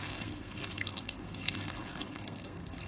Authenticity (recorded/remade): remade